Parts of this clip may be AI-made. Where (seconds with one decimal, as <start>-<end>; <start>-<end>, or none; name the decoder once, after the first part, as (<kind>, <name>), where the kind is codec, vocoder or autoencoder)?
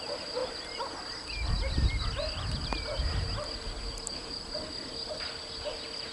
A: none